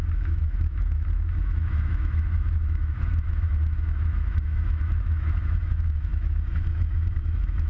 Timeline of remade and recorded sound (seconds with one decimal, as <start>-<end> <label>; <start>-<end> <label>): 0.0-7.7 remade